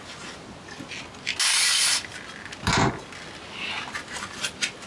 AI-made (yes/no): no